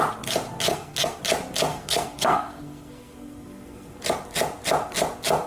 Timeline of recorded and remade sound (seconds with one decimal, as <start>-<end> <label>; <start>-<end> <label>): 0.0-0.7 recorded; 0.7-1.2 remade; 1.2-1.7 recorded; 1.7-4.0 remade; 4.0-5.5 recorded